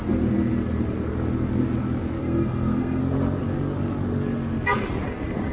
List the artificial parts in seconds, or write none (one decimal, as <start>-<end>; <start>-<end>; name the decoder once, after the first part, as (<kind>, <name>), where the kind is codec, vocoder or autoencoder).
2.2-3.0 (codec, SNAC)